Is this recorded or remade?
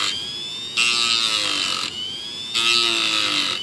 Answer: recorded